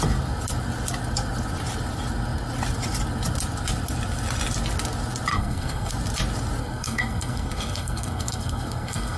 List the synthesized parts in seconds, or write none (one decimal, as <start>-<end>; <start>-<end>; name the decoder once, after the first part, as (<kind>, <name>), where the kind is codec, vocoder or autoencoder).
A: 5.3-5.9 (codec, SNAC); 6.6-9.2